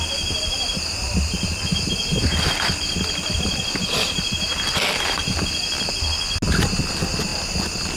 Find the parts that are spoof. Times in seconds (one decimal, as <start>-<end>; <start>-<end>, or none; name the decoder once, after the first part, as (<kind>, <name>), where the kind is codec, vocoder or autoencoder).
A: none